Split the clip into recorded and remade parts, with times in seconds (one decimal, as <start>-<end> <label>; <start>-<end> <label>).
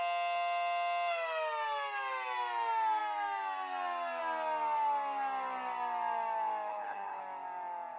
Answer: 0.0-6.7 recorded; 6.7-7.2 remade; 7.2-8.0 recorded